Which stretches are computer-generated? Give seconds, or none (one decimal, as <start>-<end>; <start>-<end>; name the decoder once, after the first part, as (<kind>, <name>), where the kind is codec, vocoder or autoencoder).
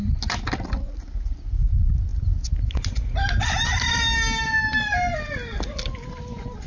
none